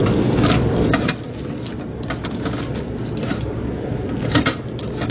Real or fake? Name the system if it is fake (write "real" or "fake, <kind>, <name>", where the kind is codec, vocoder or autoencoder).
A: real